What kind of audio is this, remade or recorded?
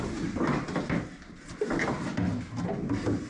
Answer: recorded